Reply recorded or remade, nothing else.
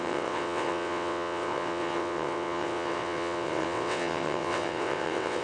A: remade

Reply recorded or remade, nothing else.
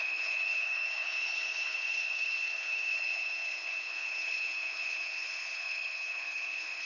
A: remade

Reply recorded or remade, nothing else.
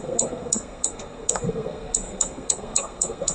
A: remade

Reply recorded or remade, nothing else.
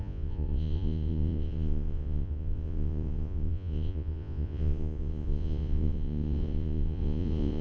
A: remade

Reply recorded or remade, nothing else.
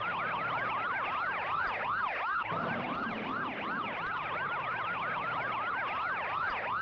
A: recorded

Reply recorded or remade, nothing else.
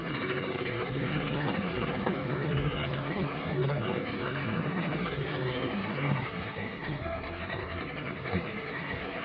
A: remade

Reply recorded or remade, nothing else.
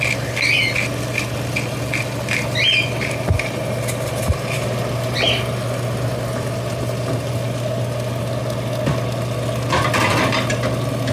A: recorded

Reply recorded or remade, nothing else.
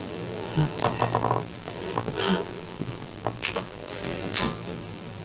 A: remade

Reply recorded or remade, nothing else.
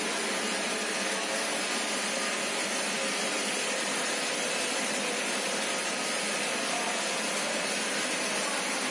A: recorded